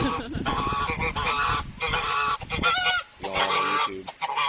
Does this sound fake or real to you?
real